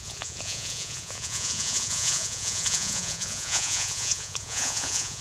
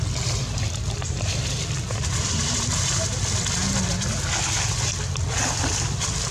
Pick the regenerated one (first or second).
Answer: first